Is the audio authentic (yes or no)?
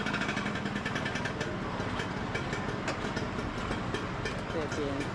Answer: yes